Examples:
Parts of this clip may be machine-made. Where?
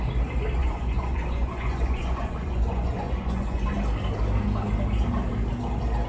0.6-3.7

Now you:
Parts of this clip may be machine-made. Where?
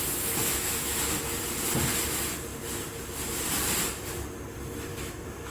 0.4-1.0; 4.9-5.5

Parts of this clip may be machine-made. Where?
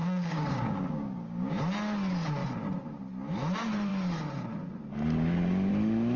0.0-1.6